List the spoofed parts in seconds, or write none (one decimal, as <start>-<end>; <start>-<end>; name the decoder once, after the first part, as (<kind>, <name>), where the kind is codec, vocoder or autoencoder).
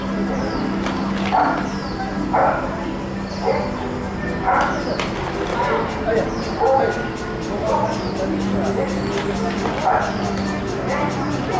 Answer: 5.5-6.6 (vocoder, BigVGAN v2)